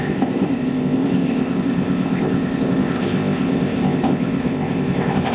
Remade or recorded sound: remade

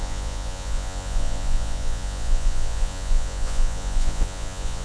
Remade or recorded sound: remade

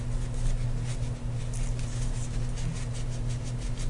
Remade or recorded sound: recorded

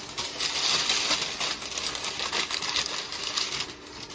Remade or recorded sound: recorded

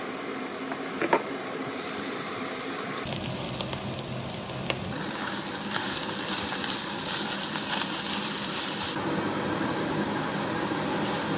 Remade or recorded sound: recorded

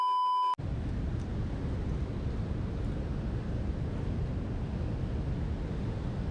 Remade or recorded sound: recorded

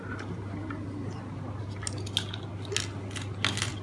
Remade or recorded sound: recorded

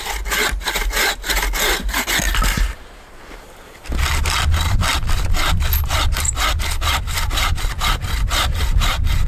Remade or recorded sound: recorded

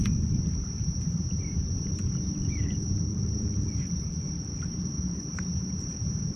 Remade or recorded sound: remade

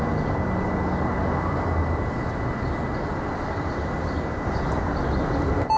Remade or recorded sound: recorded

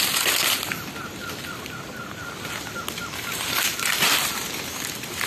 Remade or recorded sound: recorded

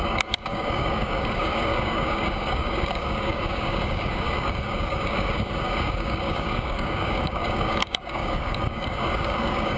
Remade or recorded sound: remade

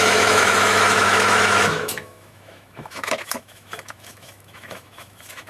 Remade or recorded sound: remade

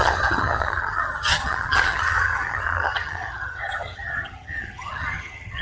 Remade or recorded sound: remade